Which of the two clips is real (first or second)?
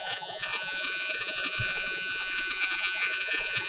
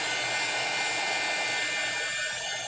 second